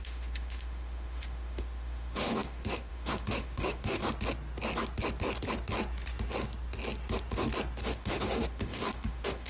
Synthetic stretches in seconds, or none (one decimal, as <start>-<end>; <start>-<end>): 0.0-4.0; 7.8-9.5

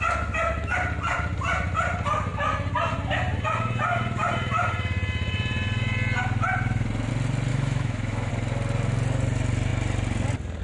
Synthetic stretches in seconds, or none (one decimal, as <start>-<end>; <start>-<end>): 7.5-8.3

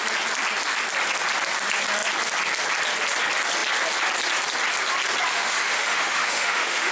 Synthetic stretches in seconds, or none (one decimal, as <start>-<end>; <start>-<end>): 5.3-6.9

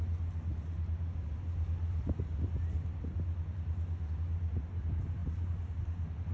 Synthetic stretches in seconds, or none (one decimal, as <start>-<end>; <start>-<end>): none

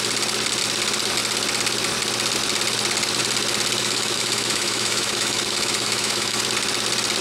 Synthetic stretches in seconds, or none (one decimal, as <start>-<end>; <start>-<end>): 3.8-6.4

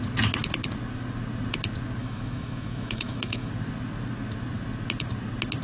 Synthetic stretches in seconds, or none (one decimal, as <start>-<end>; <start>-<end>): 2.0-3.5

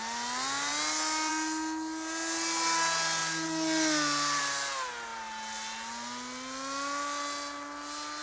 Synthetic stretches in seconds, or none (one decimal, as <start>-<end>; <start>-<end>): none

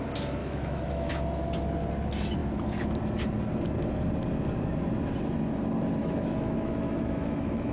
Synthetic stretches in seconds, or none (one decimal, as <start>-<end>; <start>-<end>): 0.4-1.1; 6.0-7.7